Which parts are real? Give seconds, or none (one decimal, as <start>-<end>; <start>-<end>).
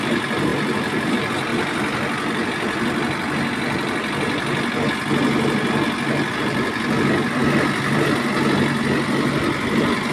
1.5-6.3; 7.4-10.1